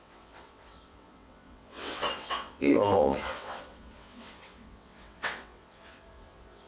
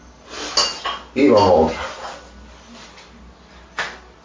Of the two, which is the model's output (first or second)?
first